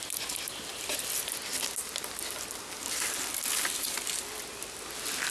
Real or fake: real